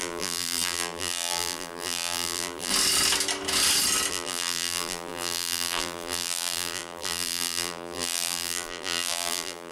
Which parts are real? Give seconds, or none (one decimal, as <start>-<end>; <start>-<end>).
2.7-4.1